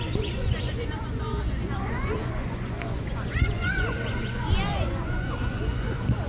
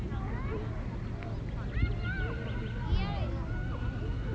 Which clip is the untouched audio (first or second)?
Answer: second